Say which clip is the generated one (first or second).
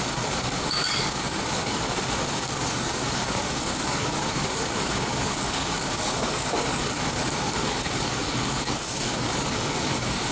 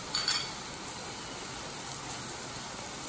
first